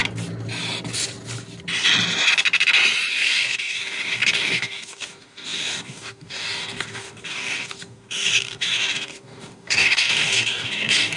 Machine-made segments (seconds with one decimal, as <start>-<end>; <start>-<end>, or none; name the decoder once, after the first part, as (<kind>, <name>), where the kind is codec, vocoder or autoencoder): 3.1-11.2 (codec, DAC)

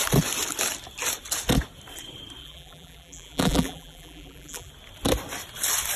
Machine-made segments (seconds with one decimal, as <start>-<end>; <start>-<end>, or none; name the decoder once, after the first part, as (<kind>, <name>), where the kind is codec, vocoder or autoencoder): 2.4-4.7 (vocoder, BigVGAN v2)

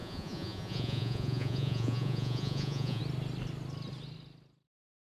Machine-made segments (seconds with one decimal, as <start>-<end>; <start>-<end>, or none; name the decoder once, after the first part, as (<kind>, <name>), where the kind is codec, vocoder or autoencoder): 0.0-3.0 (vocoder, Vocos)